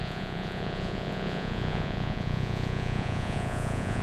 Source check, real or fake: fake